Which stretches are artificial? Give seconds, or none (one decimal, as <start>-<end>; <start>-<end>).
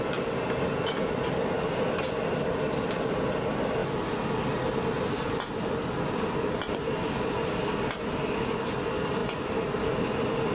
none